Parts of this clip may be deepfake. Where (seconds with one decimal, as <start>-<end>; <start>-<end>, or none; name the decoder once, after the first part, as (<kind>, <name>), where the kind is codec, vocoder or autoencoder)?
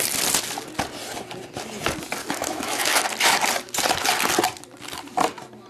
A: 2.2-3.0 (autoencoder, DAC-VAE)